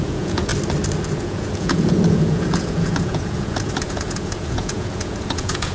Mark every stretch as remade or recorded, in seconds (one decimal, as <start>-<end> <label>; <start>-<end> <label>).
0.0-0.5 remade; 0.5-1.1 recorded; 1.1-5.7 remade